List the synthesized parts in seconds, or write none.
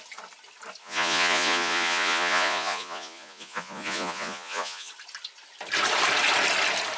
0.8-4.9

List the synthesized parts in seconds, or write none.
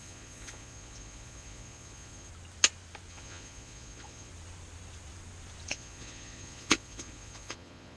0.0-2.3; 3.1-4.3; 5.7-8.0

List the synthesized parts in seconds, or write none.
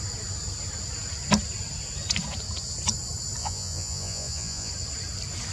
3.4-4.7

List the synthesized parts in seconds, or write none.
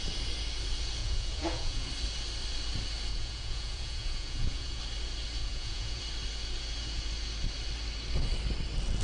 1.0-1.9; 3.1-4.8; 5.4-6.0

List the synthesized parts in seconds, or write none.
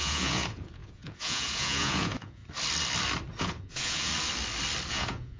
0.0-2.4; 3.4-4.1; 4.9-5.4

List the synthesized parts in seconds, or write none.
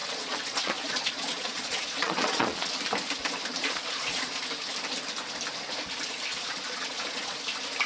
0.0-2.7; 3.6-4.4; 6.3-7.4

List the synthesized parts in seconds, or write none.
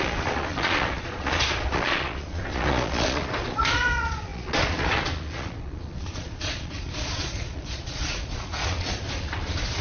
0.0-9.8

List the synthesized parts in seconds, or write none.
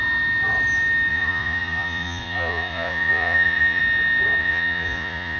1.1-3.8; 4.4-5.4